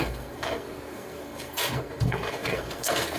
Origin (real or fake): fake